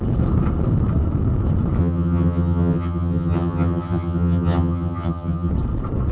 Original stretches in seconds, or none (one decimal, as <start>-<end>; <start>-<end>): 0.0-1.8; 5.5-6.1